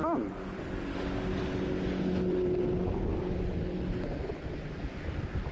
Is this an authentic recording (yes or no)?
yes